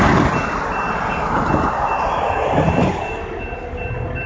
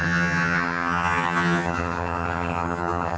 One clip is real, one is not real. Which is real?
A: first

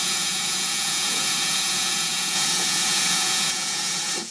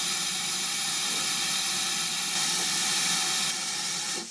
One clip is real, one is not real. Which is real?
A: second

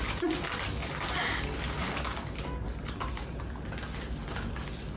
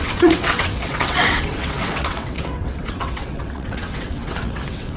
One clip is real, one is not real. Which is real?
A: first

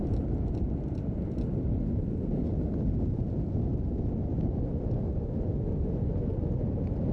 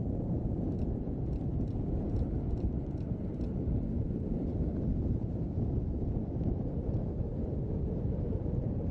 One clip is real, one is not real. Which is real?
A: first